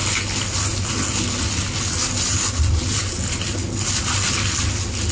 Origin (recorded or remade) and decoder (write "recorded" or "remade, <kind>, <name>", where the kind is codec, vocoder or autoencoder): recorded